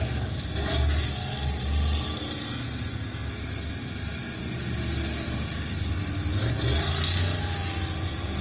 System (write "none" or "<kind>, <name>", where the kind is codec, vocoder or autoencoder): none